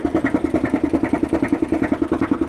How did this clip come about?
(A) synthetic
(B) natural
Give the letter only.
B